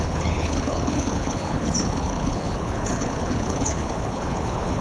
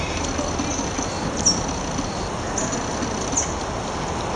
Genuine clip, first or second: second